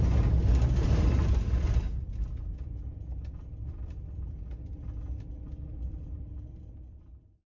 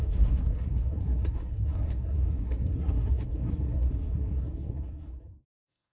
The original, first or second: first